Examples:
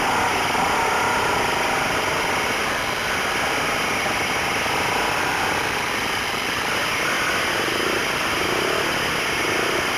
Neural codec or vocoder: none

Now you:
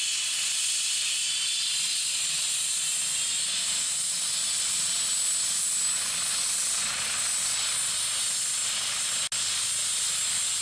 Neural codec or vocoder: none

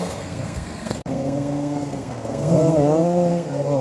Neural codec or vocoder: codec, SNAC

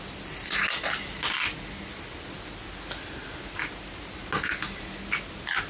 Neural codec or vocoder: none